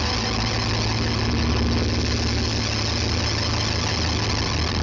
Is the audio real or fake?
real